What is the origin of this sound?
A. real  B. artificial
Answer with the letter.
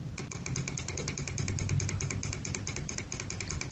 A